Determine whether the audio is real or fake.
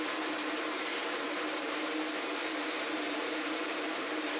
fake